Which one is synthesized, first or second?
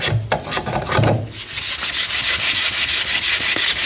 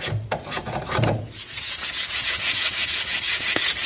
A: second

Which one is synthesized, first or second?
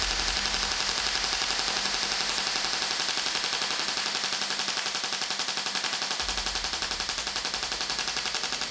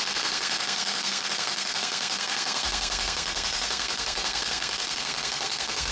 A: second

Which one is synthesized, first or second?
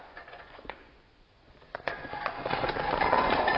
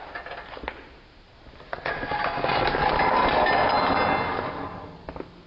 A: first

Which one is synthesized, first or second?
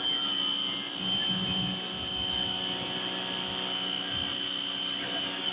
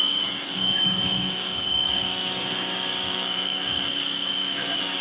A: second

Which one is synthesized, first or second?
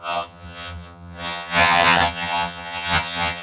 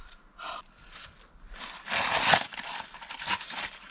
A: first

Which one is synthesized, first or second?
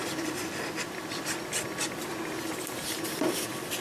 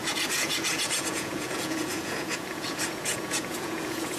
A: second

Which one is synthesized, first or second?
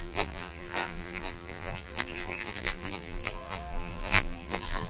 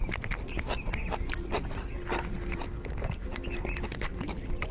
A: first